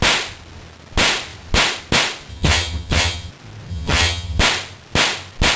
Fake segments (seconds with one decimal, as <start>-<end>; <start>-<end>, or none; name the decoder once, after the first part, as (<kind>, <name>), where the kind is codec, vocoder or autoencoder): 2.3-3.3 (vocoder, HiFi-GAN); 3.7-4.4